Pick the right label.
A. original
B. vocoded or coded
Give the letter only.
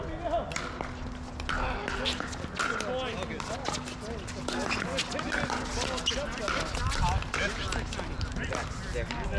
A